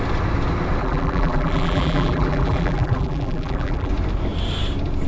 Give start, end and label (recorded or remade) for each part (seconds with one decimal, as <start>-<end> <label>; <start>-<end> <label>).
0.0-0.8 recorded; 0.8-3.9 remade; 3.9-5.1 recorded